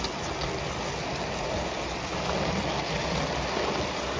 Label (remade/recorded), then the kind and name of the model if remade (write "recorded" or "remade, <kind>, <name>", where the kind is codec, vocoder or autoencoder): recorded